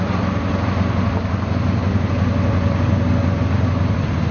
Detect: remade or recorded recorded